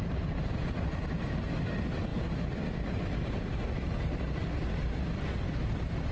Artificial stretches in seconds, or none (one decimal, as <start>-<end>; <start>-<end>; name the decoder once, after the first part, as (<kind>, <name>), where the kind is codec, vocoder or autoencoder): none